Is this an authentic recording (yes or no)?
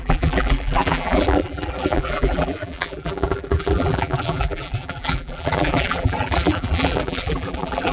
no